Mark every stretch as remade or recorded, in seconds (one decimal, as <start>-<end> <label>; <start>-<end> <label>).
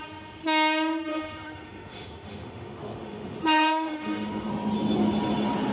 0.0-1.1 recorded; 1.1-4.5 remade; 4.5-5.7 recorded